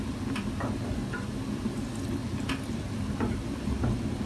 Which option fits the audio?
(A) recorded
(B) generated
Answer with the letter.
A